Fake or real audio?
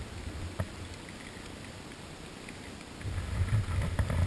real